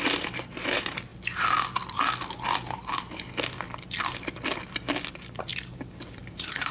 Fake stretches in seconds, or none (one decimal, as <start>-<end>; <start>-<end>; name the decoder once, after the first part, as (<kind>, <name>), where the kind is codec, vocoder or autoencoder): 0.0-1.1 (vocoder, BigVGAN v2); 5.1-5.5; 6.1-6.7